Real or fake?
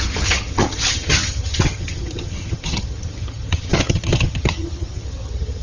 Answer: fake